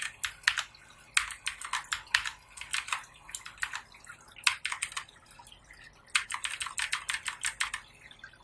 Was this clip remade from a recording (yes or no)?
no